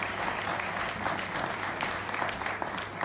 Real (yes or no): yes